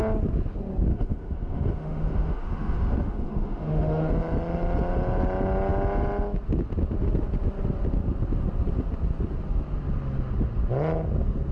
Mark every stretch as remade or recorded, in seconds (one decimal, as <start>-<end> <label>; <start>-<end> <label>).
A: 0.0-0.9 recorded; 0.9-4.1 remade; 4.1-11.5 recorded